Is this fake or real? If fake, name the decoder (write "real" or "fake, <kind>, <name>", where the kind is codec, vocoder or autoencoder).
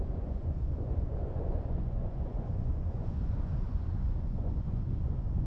fake, vocoder, Vocos